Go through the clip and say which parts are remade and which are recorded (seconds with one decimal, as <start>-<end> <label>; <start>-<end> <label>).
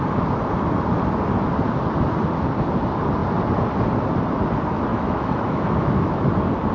0.0-4.9 recorded; 4.9-6.3 remade; 6.3-6.7 recorded